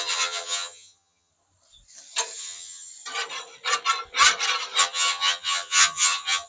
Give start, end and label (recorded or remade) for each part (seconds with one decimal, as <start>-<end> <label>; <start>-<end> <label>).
0.0-1.3 remade; 1.3-2.4 recorded; 2.4-2.9 remade; 2.9-4.8 recorded; 4.8-6.5 remade